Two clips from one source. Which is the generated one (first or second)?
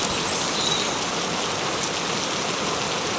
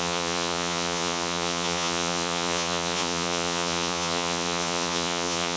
second